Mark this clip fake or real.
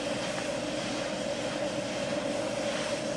real